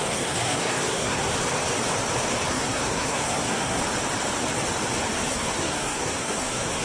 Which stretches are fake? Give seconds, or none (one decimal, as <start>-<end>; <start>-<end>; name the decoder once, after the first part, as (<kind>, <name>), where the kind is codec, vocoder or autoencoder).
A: 0.0-1.3 (codec, SNAC); 2.5-3.8; 5.3-6.8